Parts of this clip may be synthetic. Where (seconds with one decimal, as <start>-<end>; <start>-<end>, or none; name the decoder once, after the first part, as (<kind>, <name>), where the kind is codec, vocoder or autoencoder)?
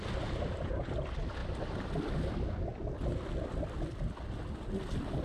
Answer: none